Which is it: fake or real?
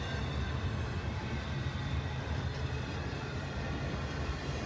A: real